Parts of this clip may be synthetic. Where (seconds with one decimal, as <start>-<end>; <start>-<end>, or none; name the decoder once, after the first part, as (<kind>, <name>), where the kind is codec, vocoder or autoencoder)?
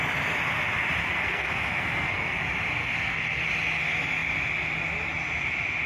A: 1.0-2.4 (codec, SNAC); 2.8-3.5